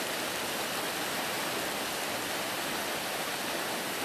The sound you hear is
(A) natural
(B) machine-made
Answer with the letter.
A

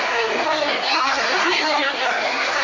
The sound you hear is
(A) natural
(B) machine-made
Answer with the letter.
B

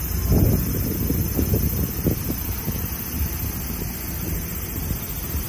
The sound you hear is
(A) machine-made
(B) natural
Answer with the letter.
B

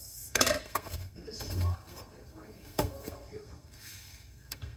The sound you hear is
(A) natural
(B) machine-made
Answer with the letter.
B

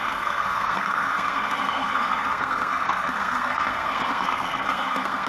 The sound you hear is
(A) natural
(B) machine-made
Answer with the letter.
B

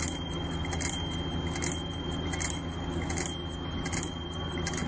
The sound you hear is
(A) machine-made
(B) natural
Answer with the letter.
B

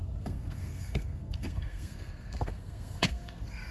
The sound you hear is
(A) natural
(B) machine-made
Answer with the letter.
B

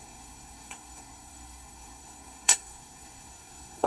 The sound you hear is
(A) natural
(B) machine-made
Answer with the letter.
B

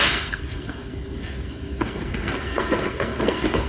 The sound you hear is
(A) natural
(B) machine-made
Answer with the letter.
B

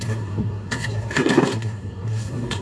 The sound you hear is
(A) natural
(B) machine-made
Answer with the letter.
B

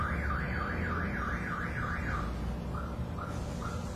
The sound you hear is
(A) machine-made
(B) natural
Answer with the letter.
B